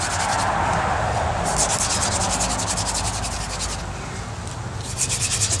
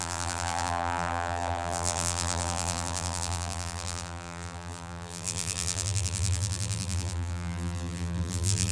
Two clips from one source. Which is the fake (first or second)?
second